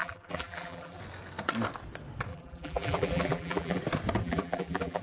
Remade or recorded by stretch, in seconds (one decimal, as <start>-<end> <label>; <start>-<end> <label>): 0.0-1.0 remade; 1.0-2.3 recorded; 2.3-3.8 remade; 3.8-4.2 recorded; 4.2-5.0 remade